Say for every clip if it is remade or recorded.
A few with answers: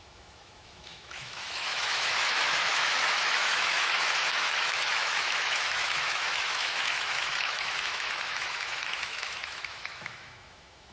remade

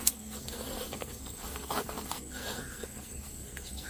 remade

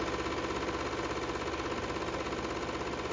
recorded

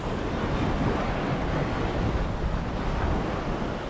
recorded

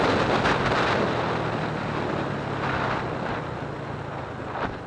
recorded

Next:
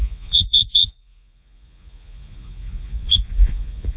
remade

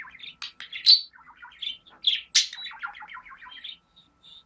recorded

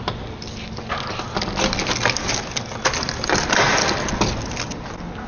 recorded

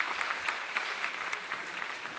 remade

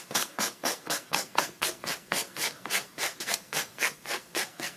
remade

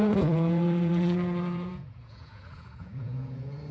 remade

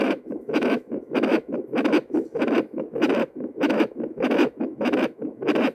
remade